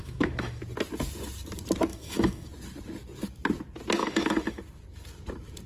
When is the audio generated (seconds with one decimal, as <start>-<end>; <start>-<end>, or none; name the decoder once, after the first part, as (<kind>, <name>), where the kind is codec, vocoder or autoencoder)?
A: 0.0-0.6 (autoencoder, DAC-VAE); 1.9-2.5; 4.0-4.6